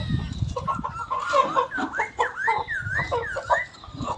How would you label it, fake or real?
real